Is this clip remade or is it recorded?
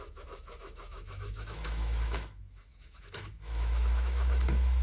remade